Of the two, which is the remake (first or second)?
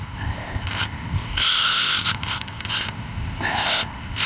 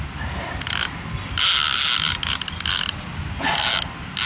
first